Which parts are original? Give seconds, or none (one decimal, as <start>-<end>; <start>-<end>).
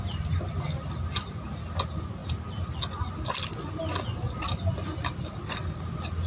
0.0-6.3